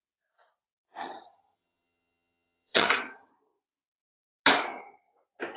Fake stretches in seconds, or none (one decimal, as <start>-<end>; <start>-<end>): 1.0-3.3